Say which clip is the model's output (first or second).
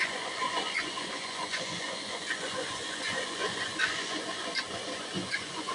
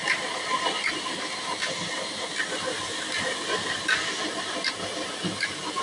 first